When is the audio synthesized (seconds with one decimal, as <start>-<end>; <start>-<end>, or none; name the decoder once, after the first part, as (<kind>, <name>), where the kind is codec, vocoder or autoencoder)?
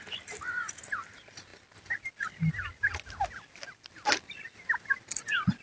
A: none